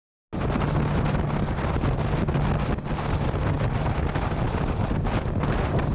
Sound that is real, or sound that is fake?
real